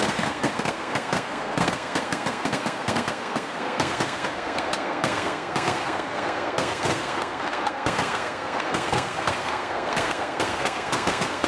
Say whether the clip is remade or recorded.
remade